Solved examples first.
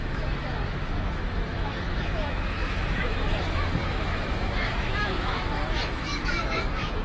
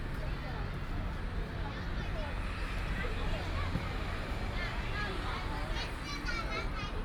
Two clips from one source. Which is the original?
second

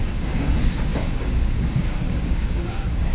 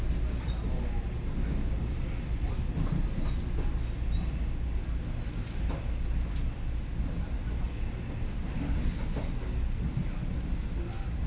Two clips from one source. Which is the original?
second